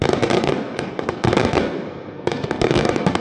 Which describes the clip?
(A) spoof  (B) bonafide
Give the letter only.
A